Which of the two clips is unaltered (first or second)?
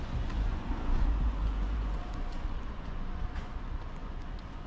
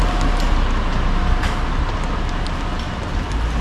second